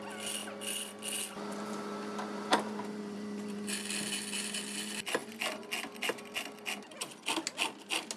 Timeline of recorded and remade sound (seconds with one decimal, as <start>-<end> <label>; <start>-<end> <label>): 0.0-8.2 recorded